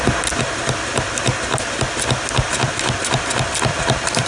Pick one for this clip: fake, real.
real